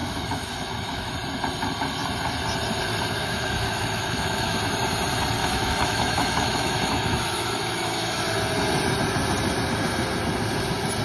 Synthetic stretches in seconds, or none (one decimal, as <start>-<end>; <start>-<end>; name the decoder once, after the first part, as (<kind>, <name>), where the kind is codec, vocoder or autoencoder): 0.0-1.1 (autoencoder, DAC-VAE); 3.2-4.6; 5.4-8.2